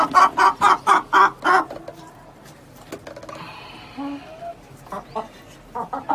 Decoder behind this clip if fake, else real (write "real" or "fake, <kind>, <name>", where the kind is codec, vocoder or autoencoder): real